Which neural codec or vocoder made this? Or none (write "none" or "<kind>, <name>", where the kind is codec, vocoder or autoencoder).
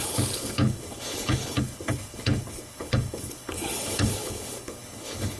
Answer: codec, HILCodec